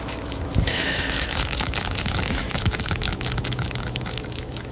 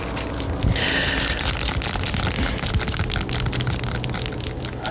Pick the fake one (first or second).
first